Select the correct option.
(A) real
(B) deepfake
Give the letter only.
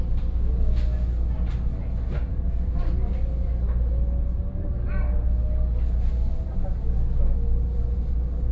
A